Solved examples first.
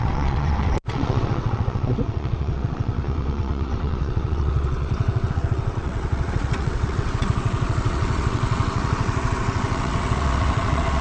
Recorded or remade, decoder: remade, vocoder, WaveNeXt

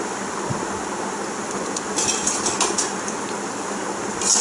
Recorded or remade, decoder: recorded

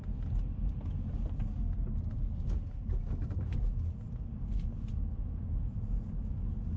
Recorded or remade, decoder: recorded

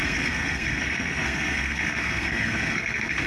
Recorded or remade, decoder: remade, codec, SNAC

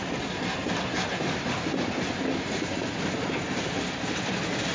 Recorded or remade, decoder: recorded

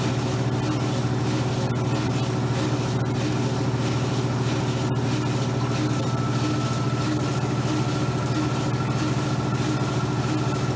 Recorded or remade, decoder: recorded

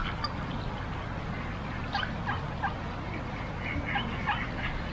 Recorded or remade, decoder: recorded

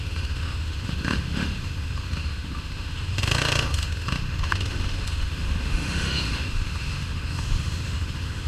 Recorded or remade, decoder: remade, autoencoder, DAC-VAE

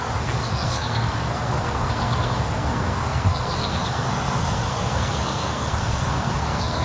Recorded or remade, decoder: remade, codec, SNAC